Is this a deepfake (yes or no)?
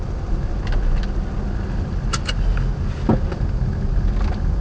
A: no